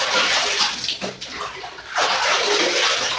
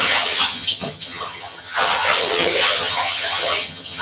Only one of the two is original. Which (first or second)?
first